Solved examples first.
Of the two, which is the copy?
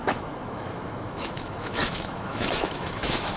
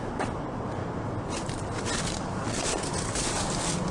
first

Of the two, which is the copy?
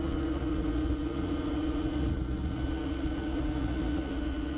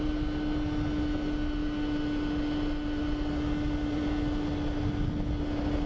first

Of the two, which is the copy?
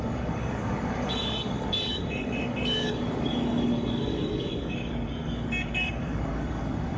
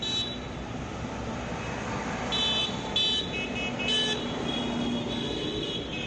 first